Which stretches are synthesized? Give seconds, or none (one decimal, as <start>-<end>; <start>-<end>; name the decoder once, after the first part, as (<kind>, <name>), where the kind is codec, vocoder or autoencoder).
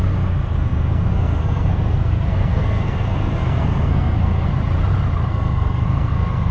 0.0-4.5 (codec, SNAC); 5.3-6.5